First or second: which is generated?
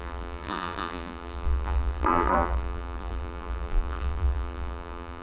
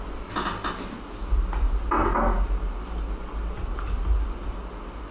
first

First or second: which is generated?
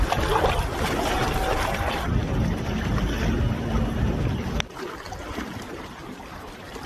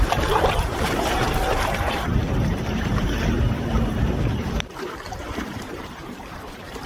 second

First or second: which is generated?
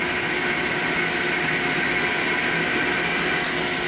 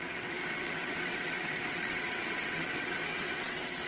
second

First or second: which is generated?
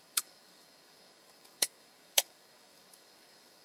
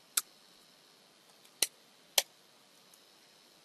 first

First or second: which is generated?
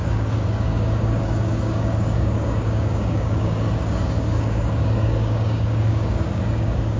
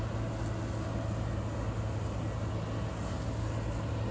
first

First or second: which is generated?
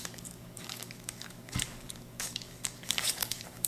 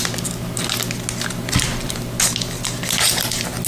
first